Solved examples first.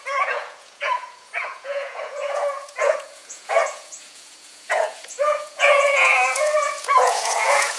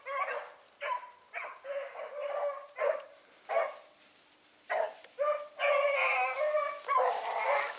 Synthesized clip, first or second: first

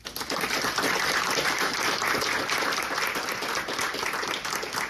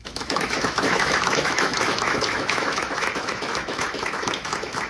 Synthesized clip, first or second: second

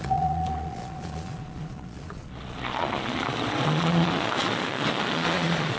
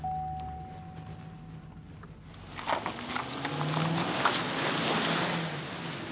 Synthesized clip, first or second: first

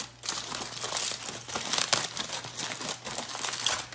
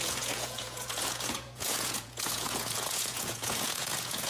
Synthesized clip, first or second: second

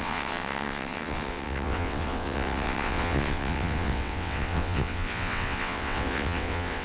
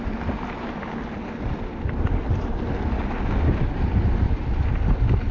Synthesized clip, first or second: first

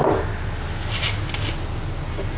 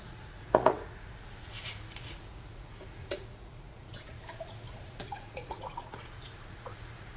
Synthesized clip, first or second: second